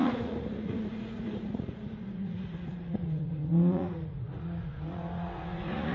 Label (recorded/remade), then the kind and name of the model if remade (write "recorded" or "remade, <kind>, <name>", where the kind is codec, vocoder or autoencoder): remade, vocoder, Vocos